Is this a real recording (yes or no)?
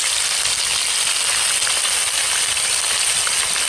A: yes